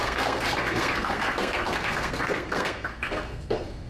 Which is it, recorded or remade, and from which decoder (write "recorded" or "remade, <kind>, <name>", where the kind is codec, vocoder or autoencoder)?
remade, codec, SNAC